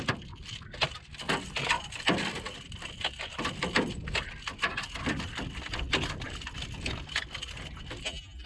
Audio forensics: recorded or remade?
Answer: recorded